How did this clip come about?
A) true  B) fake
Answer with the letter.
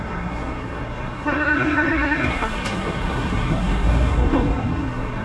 B